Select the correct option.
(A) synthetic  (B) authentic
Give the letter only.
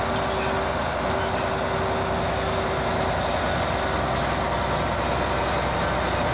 B